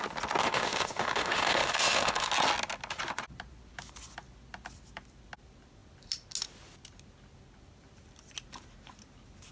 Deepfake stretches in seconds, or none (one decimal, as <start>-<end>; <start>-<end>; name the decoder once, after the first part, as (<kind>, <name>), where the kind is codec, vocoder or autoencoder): 0.4-2.3 (autoencoder, DAC-VAE)